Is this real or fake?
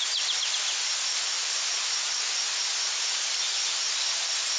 real